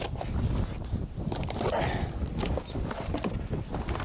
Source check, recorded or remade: recorded